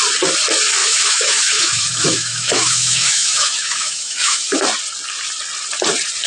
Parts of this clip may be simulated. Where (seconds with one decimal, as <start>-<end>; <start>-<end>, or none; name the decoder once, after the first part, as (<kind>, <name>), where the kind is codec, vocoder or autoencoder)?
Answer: 0.8-4.6 (autoencoder, DAC-VAE)